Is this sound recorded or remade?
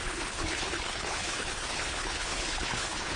remade